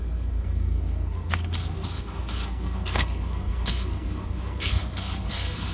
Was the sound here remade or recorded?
remade